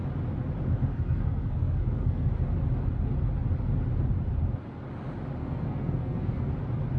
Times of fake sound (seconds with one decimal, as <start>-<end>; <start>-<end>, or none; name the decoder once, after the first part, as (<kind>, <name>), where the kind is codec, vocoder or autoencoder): 0.9-2.3 (codec, SNAC); 5.4-6.5